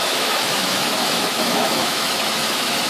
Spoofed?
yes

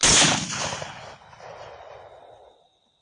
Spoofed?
no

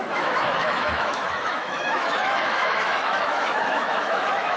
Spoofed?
yes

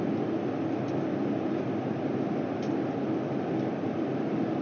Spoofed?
no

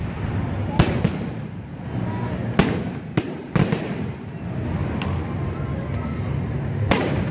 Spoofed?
no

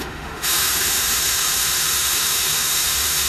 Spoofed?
yes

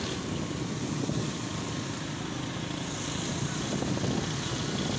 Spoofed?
no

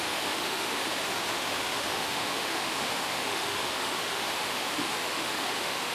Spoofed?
yes